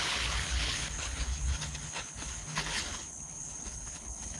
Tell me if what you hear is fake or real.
fake